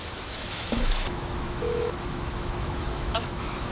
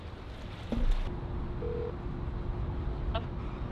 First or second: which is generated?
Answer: first